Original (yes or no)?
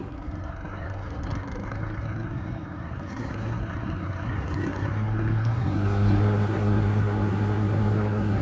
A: no